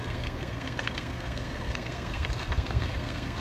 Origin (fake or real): fake